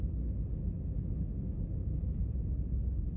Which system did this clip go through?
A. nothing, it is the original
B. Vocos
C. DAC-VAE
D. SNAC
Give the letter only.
A